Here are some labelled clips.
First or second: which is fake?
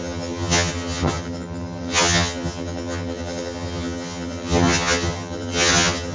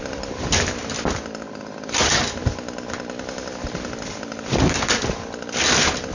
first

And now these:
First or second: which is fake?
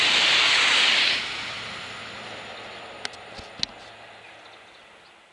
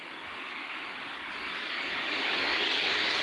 second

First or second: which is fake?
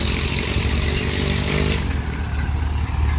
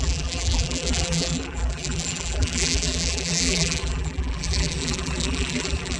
second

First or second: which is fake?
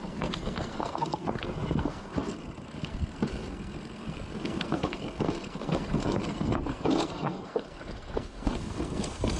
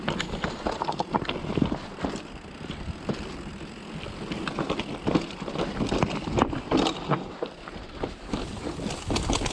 first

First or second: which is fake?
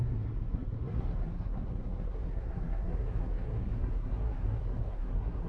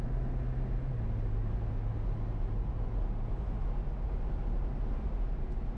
first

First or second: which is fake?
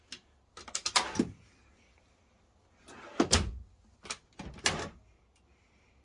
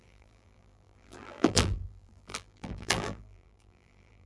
second